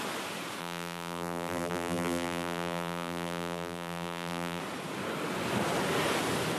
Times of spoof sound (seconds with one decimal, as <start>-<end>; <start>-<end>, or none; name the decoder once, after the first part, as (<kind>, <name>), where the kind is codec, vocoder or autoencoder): 0.6-4.6 (vocoder, BigVGAN v2)